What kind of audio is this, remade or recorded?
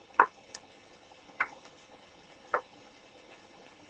remade